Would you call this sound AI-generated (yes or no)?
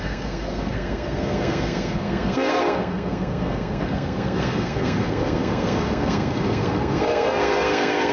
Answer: yes